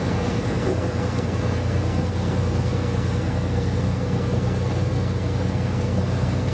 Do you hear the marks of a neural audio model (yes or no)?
yes